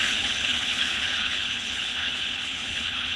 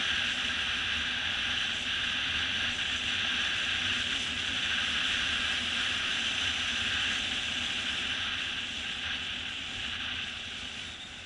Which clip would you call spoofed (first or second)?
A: first